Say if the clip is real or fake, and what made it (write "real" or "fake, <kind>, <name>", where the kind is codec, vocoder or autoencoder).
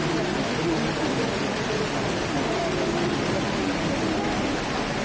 real